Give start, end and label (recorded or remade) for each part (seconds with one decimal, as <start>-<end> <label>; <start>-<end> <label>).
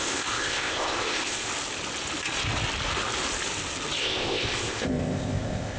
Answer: 0.0-1.5 remade; 1.5-4.0 recorded; 4.0-5.8 remade